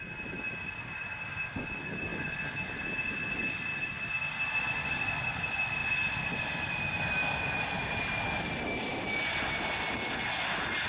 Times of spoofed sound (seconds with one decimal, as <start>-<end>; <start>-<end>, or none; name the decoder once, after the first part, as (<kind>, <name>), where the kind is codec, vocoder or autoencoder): none